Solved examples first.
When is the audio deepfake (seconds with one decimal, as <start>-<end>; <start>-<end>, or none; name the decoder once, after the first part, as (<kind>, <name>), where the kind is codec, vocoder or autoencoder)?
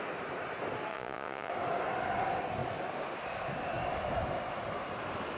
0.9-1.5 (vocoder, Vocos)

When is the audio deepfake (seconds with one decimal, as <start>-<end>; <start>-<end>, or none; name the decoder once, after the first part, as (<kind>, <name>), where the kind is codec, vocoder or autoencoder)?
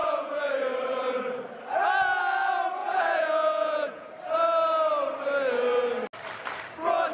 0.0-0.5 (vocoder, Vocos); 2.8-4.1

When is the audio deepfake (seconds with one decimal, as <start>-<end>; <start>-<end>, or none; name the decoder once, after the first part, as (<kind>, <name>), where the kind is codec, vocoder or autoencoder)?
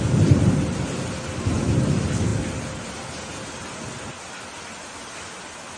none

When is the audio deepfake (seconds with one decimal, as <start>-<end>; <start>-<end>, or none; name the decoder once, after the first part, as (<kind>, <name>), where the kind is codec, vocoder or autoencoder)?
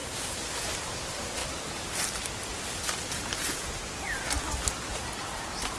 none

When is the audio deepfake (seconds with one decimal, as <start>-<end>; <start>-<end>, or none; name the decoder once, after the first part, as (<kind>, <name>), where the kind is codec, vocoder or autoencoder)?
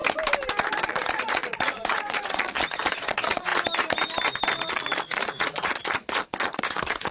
0.8-3.5 (vocoder, Vocos); 4.7-7.1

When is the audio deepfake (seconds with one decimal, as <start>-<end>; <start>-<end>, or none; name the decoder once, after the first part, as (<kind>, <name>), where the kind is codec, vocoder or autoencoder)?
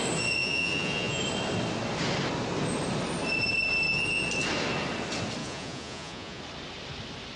0.4-1.2 (vocoder, Vocos); 5.4-6.4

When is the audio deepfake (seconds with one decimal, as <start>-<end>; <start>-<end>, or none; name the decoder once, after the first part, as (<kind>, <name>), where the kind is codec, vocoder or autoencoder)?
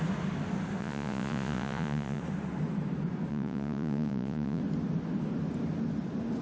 0.8-2.2 (vocoder, Vocos); 3.3-4.6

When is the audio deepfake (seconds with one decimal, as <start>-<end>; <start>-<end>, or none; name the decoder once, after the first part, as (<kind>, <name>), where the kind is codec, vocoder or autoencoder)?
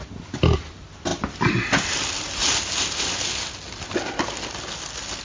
none